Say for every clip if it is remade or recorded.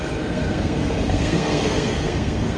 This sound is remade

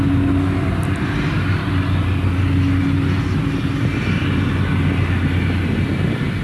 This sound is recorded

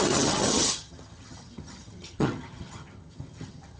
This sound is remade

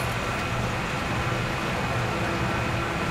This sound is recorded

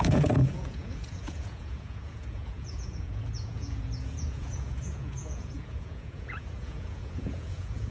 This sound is remade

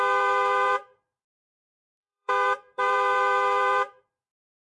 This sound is remade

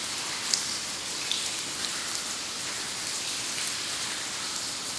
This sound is remade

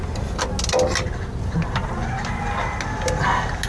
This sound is recorded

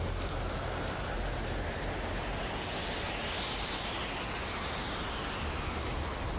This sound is recorded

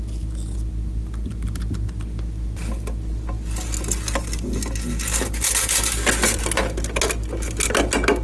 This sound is recorded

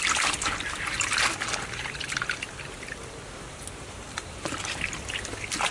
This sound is remade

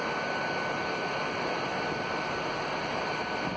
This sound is recorded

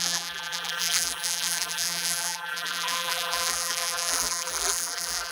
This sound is remade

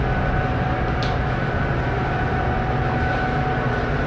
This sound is recorded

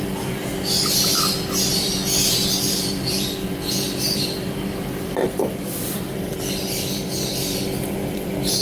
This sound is remade